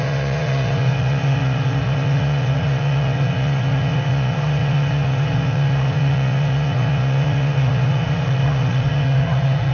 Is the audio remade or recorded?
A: remade